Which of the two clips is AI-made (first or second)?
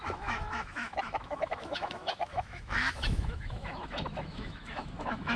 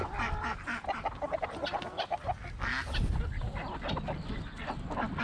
first